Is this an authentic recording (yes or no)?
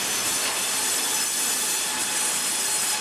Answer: yes